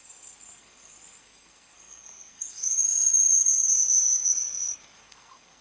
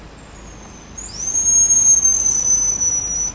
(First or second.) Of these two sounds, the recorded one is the second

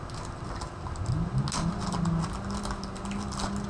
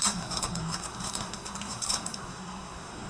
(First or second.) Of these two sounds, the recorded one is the first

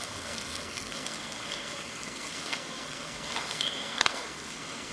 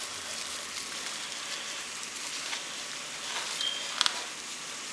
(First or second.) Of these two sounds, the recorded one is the second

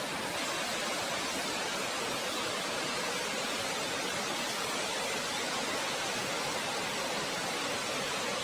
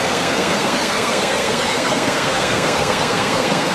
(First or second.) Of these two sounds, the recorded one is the first